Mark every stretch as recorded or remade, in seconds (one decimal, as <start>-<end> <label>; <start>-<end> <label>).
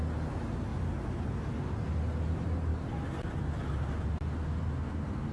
0.0-5.3 recorded